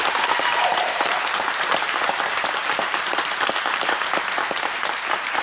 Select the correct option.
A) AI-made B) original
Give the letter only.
A